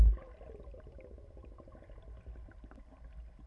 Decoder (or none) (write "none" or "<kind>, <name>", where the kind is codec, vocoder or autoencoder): none